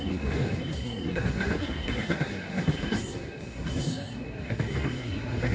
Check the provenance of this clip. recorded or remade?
remade